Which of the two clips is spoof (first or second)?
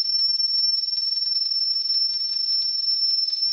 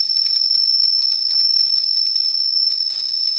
second